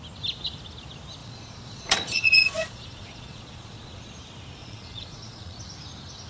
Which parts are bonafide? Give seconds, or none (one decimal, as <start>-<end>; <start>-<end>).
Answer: 0.0-1.2; 4.1-4.6; 5.6-6.3